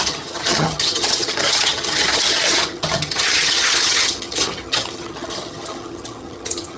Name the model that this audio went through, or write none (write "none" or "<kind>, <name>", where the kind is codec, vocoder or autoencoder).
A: vocoder, HiFi-GAN